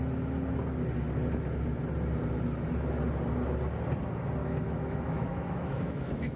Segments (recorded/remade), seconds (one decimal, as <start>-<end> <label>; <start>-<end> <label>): 0.0-4.4 recorded; 4.4-6.4 remade

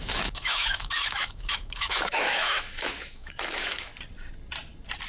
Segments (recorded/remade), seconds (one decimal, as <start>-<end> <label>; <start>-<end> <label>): 0.0-3.9 remade; 3.9-5.1 recorded